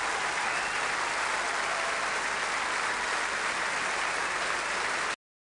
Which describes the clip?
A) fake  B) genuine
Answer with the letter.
B